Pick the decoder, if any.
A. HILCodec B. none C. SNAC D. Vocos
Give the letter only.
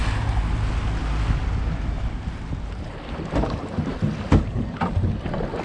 B